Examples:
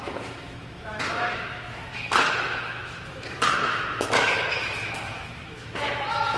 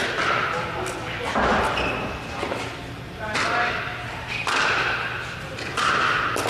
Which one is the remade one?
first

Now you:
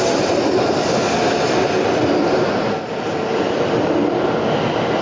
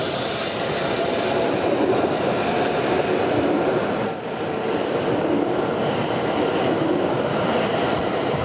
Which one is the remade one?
second